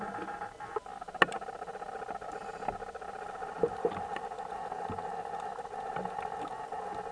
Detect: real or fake real